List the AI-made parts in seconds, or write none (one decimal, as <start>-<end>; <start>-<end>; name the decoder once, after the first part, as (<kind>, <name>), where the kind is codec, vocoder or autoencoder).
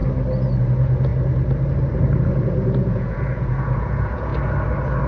0.6-1.1 (vocoder, Vocos); 2.2-4.3